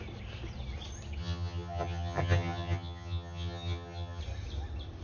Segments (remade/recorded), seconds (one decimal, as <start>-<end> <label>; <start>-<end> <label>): 0.0-1.2 recorded; 1.2-4.2 remade; 4.2-5.0 recorded